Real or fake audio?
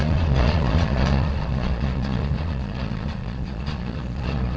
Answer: fake